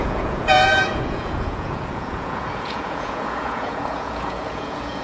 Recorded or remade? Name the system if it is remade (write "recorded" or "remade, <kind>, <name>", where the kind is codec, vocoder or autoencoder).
remade, vocoder, Vocos